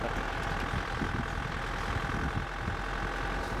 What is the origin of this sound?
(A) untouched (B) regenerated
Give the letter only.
A